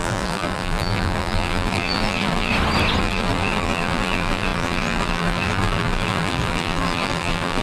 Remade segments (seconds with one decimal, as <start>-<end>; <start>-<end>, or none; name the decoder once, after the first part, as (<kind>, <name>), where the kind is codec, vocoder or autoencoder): 0.0-2.5 (vocoder, BigVGAN v2); 3.0-7.6